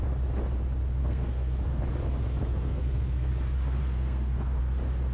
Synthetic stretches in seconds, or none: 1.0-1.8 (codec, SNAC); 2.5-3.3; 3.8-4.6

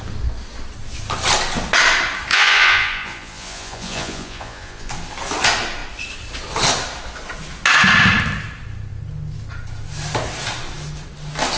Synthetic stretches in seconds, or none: 2.3-4.9 (vocoder, Vocos)

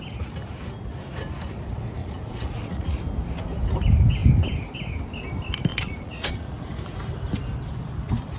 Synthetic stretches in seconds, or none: 2.0-3.0 (vocoder, Vocos); 5.7-6.7

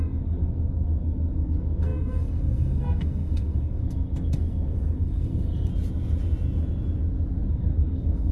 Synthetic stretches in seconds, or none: 0.0-5.7 (codec, SNAC); 7.5-8.3

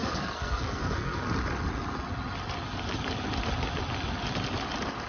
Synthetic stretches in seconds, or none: 0.0-1.2 (codec, SNAC)

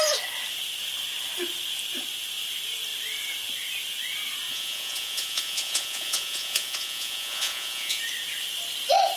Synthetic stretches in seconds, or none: 4.5-8.0 (vocoder, Vocos)

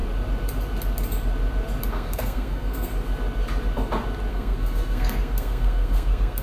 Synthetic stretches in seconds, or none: 1.9-2.9 (codec, SNAC); 4.3-6.4

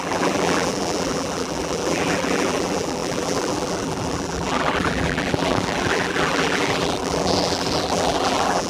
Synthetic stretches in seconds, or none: 0.0-8.7 (vocoder, BigVGAN v2)